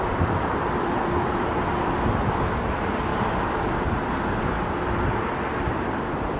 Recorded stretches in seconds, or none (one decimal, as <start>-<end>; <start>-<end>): 3.1-3.9